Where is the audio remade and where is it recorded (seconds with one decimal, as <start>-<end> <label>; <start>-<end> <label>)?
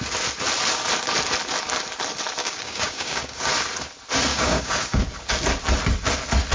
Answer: 0.0-2.4 recorded; 2.4-3.5 remade; 3.5-4.3 recorded; 4.3-5.0 remade; 5.0-6.5 recorded